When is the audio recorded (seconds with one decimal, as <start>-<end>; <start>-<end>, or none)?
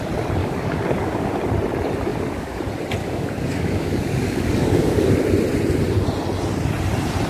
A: 0.0-0.4; 1.3-2.1; 2.6-3.0; 5.1-7.3